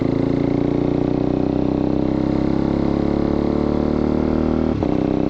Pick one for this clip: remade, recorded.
recorded